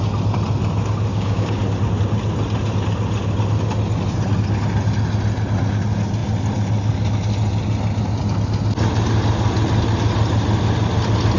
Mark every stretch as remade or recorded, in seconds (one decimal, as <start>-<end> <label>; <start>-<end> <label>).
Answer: 0.0-1.1 recorded; 1.1-1.6 remade; 1.6-11.4 recorded